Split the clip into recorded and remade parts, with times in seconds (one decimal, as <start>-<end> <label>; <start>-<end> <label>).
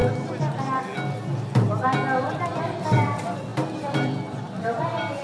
0.0-2.2 recorded; 2.2-5.2 remade